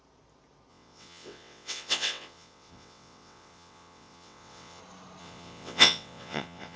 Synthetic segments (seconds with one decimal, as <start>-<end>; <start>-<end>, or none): 0.7-4.8; 5.2-6.8

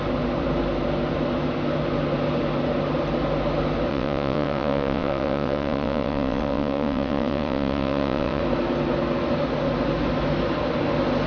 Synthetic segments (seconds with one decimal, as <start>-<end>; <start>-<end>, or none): 3.9-8.4

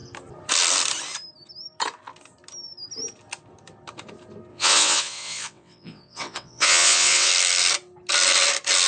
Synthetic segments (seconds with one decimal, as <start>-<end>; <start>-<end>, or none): 4.5-7.3

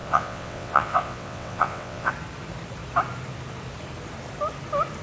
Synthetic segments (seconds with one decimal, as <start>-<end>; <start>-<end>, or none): 0.0-2.1

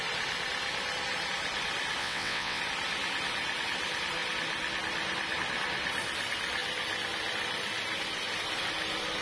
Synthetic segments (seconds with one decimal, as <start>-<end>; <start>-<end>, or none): 2.0-2.6

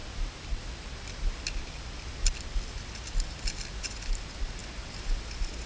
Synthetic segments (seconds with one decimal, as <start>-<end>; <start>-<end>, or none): none

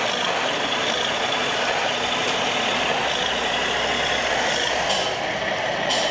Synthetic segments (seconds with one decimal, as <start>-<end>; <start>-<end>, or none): none

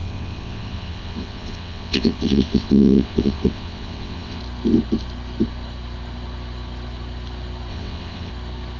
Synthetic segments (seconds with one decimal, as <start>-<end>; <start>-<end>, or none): 0.0-4.4; 7.7-8.3